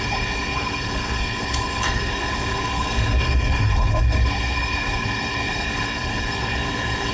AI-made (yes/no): yes